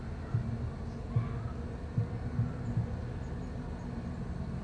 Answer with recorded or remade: recorded